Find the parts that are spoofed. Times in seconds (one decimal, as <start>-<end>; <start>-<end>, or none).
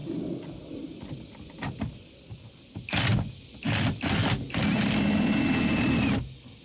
none